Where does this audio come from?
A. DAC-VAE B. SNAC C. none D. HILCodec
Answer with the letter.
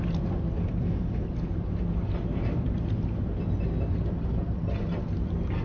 C